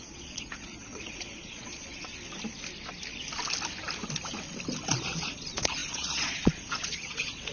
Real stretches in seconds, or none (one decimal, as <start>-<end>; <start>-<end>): 2.1-5.0